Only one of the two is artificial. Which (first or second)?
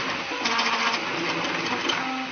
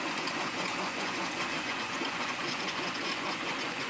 second